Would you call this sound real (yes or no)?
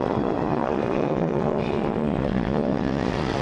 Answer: no